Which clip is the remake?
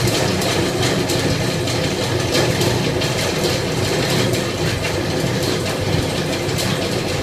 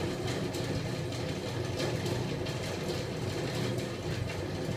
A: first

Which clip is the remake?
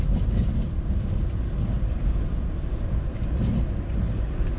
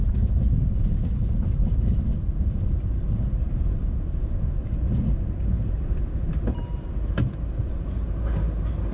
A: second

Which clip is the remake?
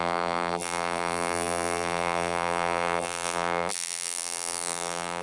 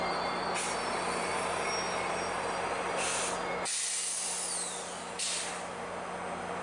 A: first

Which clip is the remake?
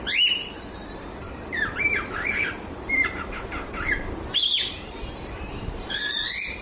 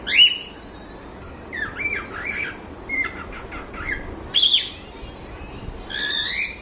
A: first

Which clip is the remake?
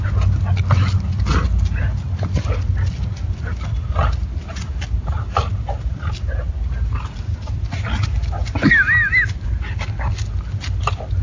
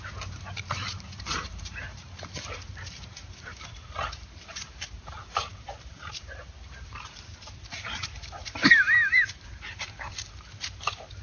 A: second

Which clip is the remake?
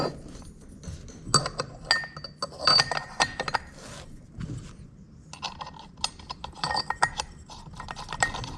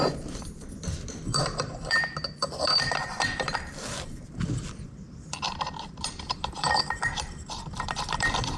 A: second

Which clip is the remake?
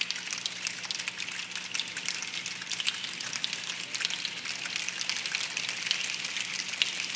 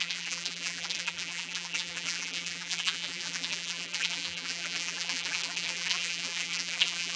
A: second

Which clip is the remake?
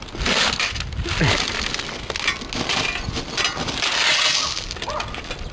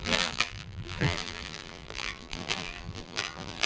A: second